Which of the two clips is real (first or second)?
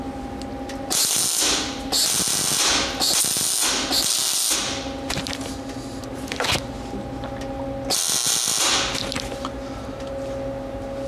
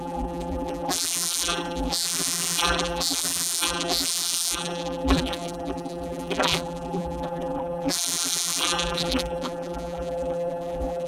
first